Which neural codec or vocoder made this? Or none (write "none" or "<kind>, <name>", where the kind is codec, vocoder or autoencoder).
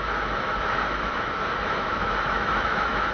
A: autoencoder, DAC-VAE